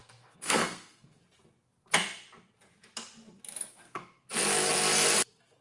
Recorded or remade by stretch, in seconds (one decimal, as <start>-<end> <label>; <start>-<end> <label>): 0.0-1.2 remade; 1.2-3.7 recorded; 3.7-4.3 remade; 4.3-5.6 recorded